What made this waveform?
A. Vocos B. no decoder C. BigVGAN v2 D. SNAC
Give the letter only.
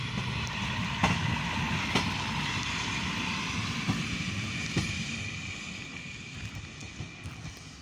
B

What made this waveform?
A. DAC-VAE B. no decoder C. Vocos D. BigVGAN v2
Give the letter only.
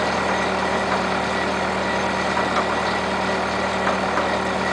B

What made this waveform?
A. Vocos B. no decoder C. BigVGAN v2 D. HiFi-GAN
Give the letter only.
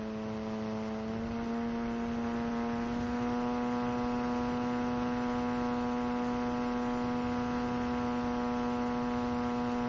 B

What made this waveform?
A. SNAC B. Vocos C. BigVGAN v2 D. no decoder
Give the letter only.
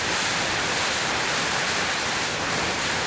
C